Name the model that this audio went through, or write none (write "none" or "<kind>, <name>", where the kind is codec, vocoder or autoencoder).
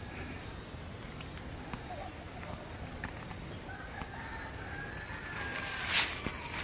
none